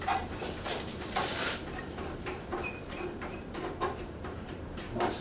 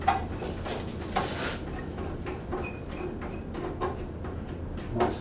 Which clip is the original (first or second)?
second